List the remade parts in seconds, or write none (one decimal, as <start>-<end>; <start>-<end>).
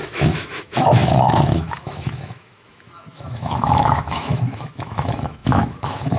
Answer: 0.0-6.2